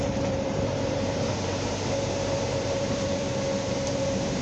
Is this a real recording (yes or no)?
no